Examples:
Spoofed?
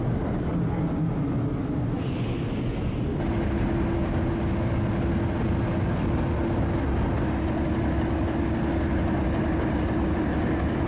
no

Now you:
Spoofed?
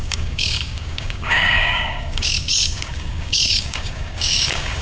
yes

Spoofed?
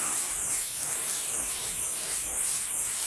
yes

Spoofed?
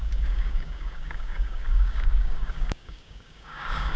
yes